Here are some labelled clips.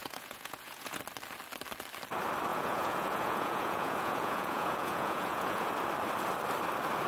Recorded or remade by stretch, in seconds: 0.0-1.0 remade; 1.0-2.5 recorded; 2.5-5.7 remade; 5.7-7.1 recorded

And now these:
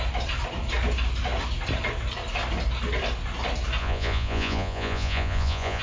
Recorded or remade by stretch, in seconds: 0.0-3.8 recorded; 3.8-5.8 remade

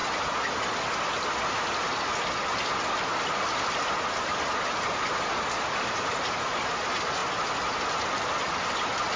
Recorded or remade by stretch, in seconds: 0.0-9.2 recorded